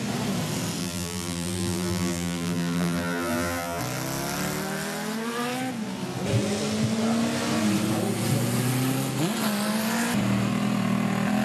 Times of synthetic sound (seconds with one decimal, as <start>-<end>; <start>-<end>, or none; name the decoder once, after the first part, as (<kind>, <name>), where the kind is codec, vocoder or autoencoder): 0.8-3.8 (vocoder, BigVGAN v2)